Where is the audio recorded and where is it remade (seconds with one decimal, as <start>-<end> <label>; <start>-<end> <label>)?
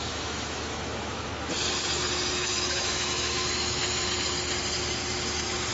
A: 0.0-1.3 remade; 1.3-2.3 recorded; 2.3-3.8 remade; 3.8-5.7 recorded